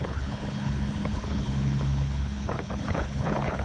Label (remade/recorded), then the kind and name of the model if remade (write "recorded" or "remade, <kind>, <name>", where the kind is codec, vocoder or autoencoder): remade, codec, HILCodec